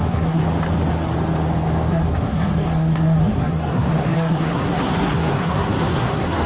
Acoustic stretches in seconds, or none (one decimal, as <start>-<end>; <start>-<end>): 0.4-1.9